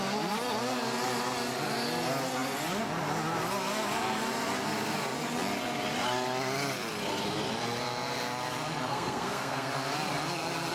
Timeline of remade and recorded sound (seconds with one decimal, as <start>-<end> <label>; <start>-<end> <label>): 0.0-8.9 recorded; 8.9-9.7 remade; 9.7-10.7 recorded